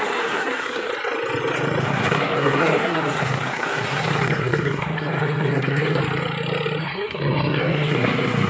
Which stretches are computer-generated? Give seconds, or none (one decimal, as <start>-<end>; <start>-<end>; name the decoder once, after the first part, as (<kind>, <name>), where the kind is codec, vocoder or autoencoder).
0.0-0.9 (codec, SNAC); 1.8-6.0; 6.8-8.5